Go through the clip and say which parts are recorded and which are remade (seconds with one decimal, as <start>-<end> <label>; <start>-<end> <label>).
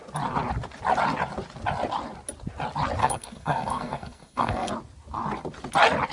0.0-3.0 recorded; 3.0-4.7 remade; 4.7-6.1 recorded